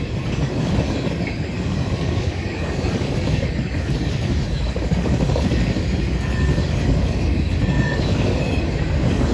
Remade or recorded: remade